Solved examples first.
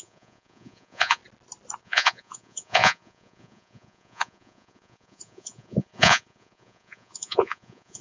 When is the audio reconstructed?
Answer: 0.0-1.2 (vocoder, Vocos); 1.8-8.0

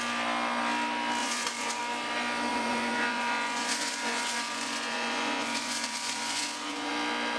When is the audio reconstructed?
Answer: 1.2-1.8 (vocoder, Vocos); 2.5-6.9

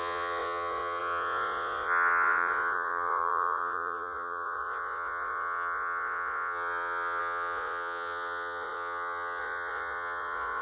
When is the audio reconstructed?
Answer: 0.0-10.6 (vocoder, Vocos)

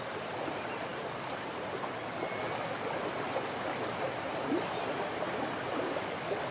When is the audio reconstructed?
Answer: none